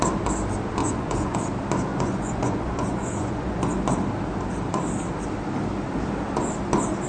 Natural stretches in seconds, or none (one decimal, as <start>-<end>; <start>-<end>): 0.0-0.8; 1.4-1.9; 3.7-7.1